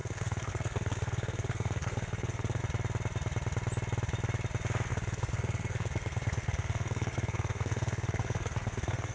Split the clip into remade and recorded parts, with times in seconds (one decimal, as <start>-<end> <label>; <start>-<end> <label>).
0.0-2.6 remade; 2.6-4.9 recorded; 4.9-9.1 remade